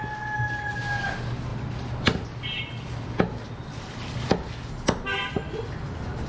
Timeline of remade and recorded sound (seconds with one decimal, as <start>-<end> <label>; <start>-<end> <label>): 0.0-6.3 recorded